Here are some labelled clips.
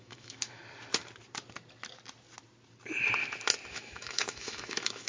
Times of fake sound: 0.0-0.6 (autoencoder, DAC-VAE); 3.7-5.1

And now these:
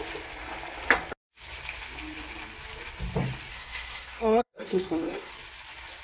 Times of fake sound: 3.5-5.3 (codec, SNAC)

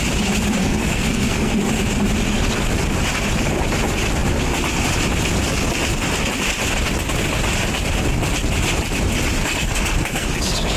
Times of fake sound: 0.6-1.7 (codec, SNAC); 9.4-10.8

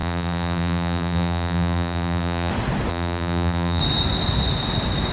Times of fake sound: 0.0-2.5 (vocoder, BigVGAN v2); 2.9-3.8

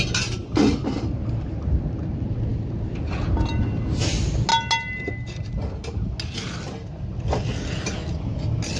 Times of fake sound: none

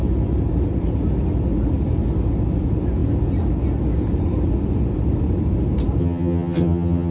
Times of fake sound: 6.0-7.1 (vocoder, HiFi-GAN)

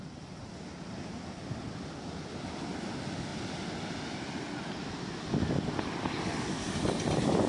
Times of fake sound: none

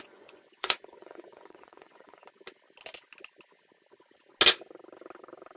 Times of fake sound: 0.0-2.2 (vocoder, Vocos)